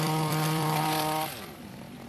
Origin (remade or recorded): remade